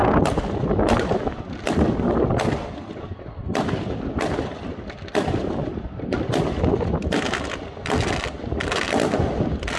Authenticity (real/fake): real